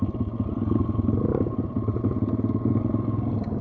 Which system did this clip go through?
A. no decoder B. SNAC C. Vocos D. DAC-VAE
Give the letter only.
A